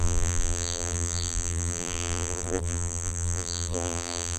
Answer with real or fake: fake